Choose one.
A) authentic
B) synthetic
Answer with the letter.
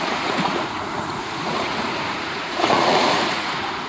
B